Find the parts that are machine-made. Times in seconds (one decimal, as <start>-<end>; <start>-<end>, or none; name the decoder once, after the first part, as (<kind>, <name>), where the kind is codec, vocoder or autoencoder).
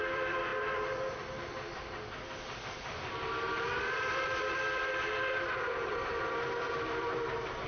0.0-0.5 (vocoder, BigVGAN v2); 3.3-7.7